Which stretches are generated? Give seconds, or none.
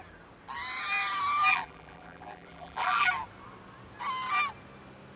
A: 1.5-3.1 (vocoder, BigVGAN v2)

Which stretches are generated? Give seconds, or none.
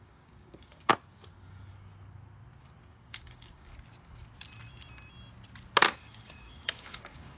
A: 0.0-0.9 (codec, DAC); 2.8-3.7; 6.0-7.4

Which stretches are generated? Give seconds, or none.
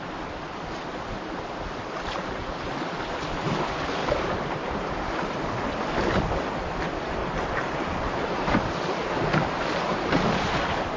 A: 4.0-5.4 (vocoder, BigVGAN v2); 7.2-10.6